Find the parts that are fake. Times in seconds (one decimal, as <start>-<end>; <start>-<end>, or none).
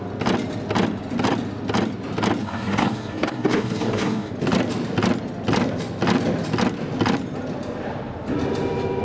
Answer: 2.4-4.3